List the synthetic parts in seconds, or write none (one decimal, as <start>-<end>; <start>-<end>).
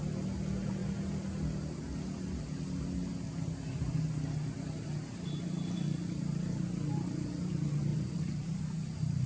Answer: 7.9-8.6